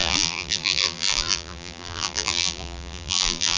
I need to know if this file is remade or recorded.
remade